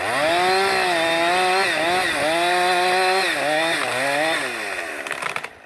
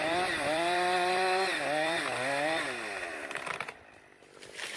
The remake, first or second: second